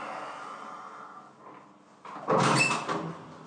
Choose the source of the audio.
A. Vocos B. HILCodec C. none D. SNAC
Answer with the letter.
C